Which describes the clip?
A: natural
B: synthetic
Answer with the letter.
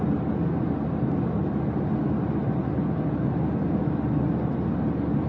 A